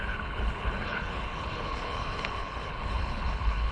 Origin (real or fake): fake